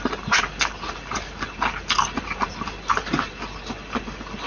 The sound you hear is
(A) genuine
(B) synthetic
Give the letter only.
A